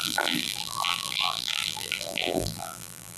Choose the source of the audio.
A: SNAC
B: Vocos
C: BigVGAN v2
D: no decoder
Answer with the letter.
C